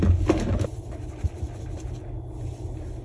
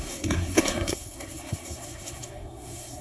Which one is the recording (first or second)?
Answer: first